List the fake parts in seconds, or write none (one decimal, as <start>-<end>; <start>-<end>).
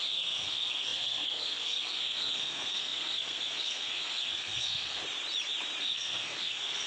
0.0-5.0; 5.8-6.9